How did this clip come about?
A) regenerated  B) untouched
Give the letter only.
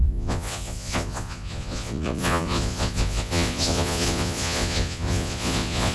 A